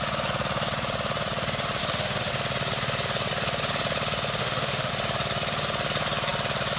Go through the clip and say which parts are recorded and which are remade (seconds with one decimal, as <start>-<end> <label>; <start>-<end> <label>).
0.0-1.8 recorded; 1.8-2.3 remade; 2.3-4.4 recorded; 4.4-4.9 remade; 4.9-6.8 recorded